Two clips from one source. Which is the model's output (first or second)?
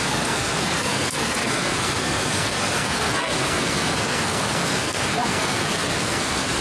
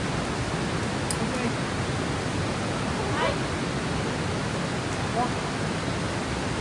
first